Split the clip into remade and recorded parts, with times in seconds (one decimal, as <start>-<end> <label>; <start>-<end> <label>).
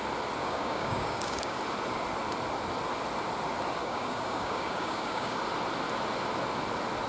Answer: 0.0-0.4 recorded; 0.4-1.6 remade; 1.6-3.8 recorded; 3.8-5.4 remade; 5.4-7.1 recorded